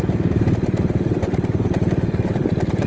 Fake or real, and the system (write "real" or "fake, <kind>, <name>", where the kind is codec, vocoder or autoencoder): real